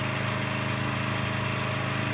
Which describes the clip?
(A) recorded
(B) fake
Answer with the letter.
A